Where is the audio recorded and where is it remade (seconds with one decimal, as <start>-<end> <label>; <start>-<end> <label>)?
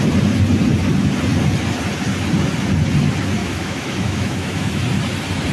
0.0-3.4 recorded; 3.4-4.8 remade; 4.8-5.5 recorded